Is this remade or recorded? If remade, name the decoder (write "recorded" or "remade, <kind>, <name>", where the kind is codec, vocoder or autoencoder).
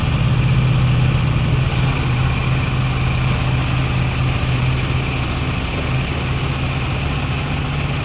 recorded